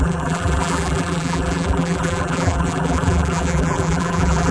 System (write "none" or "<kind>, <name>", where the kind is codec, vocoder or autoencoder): vocoder, BigVGAN v2